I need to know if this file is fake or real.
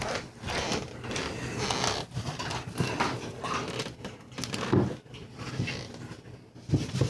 real